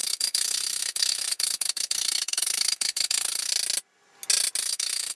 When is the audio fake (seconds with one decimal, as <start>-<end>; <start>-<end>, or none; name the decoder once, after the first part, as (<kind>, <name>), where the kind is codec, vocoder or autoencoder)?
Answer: 0.0-3.5 (codec, SNAC); 4.6-5.1